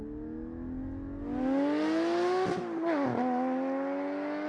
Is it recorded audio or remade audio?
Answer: recorded